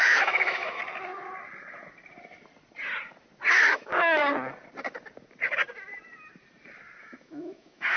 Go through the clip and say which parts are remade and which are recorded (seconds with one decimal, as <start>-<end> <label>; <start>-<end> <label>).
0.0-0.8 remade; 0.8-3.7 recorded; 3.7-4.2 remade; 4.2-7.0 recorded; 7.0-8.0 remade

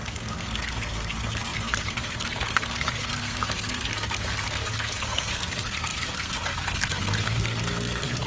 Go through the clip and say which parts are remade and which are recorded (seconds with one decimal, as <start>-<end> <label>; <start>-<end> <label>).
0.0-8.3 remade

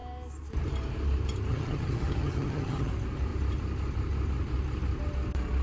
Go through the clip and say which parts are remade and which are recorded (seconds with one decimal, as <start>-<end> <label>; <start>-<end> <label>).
0.0-1.5 recorded; 1.5-2.9 remade; 2.9-5.6 recorded

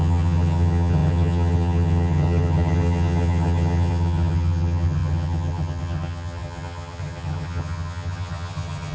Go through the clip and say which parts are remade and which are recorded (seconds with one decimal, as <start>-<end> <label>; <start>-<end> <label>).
0.0-8.9 remade

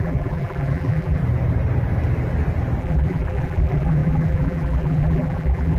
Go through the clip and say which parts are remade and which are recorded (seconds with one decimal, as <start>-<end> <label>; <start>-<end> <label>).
0.0-1.2 remade; 1.2-2.8 recorded; 2.8-5.8 remade

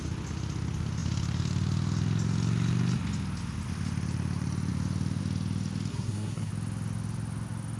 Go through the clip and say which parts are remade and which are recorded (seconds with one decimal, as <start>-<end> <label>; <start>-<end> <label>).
0.0-5.9 recorded; 5.9-6.5 remade; 6.5-7.8 recorded

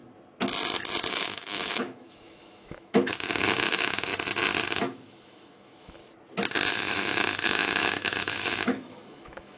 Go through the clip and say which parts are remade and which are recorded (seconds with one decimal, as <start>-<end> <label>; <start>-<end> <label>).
0.0-1.1 recorded; 1.1-4.1 remade; 4.1-4.7 recorded; 4.7-6.0 remade; 6.0-6.7 recorded; 6.7-9.6 remade

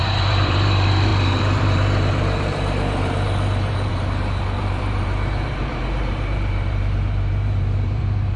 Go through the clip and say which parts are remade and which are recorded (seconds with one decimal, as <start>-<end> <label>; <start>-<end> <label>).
0.0-8.4 remade